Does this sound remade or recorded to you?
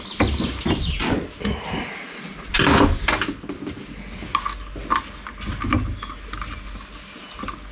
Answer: recorded